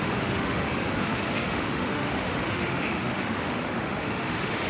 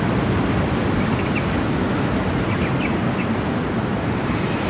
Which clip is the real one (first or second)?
second